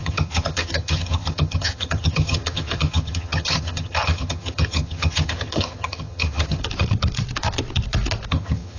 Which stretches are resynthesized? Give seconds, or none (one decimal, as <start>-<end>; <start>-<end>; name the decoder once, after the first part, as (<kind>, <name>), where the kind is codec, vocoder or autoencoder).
0.0-6.6 (vocoder, HiFi-GAN); 8.3-8.8